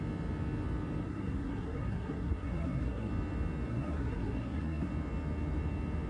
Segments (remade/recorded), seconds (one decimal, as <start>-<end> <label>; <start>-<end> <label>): 0.0-1.0 recorded; 1.0-3.1 remade; 3.1-3.7 recorded; 3.7-4.9 remade; 4.9-6.1 recorded